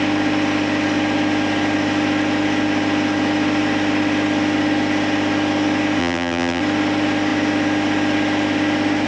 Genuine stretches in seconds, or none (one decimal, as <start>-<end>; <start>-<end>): 0.0-6.0; 6.6-9.1